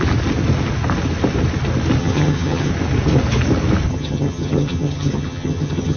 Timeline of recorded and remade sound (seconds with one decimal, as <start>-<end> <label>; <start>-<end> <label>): 0.0-2.0 recorded; 2.0-2.7 remade; 2.7-3.9 recorded; 3.9-6.0 remade